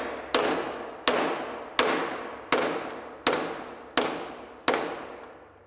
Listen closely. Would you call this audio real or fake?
real